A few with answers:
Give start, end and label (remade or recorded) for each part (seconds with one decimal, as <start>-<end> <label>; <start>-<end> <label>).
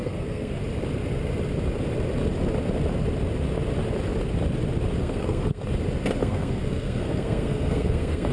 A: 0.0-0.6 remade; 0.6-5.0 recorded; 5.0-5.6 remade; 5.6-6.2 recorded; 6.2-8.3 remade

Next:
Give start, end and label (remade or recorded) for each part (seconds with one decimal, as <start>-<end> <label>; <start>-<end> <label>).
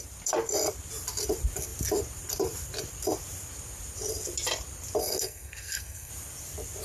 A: 0.0-5.0 recorded; 5.0-6.1 remade; 6.1-6.8 recorded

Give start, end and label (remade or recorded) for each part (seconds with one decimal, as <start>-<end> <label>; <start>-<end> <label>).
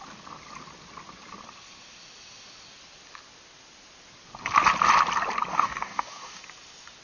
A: 0.0-5.5 recorded; 5.5-6.4 remade; 6.4-7.0 recorded